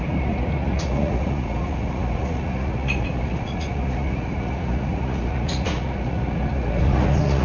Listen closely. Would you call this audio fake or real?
fake